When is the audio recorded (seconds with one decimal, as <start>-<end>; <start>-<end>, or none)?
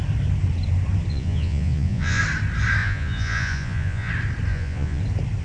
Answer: 0.0-1.1; 2.2-2.8; 4.1-4.5; 5.0-5.4